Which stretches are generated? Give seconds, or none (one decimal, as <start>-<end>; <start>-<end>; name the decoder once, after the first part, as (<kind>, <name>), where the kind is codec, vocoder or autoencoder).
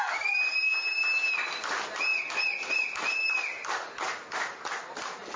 none